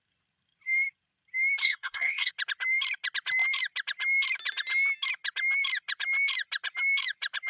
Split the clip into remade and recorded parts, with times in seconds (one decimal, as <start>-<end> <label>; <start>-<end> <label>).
0.0-1.6 recorded; 1.6-2.3 remade; 2.3-7.5 recorded